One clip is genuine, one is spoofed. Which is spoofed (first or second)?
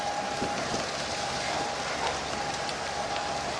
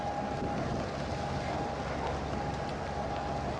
first